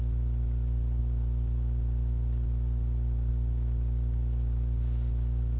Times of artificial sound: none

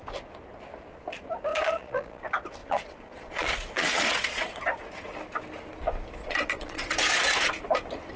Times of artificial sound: 1.5-2.2 (vocoder, Vocos); 2.6-4.6; 6.2-7.5

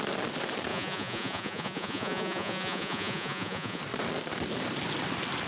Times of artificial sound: 0.7-3.8 (vocoder, Vocos)

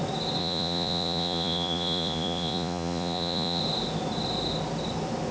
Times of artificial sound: 0.4-3.6 (vocoder, Vocos)

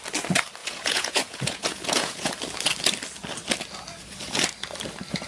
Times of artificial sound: 0.6-2.3 (vocoder, Vocos)

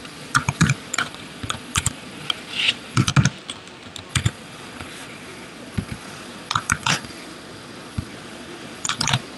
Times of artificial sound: 0.0-3.1 (vocoder, Vocos); 4.1-9.4

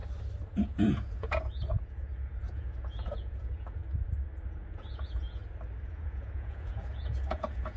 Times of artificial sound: 0.5-3.8 (vocoder, Vocos); 4.5-5.4; 5.9-7.8